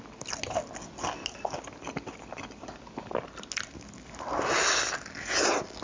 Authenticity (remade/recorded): recorded